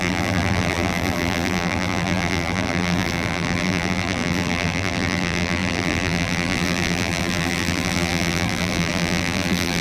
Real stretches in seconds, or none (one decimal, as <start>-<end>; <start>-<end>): none